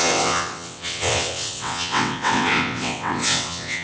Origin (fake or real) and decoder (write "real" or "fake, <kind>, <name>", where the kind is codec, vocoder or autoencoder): fake, vocoder, WaveNeXt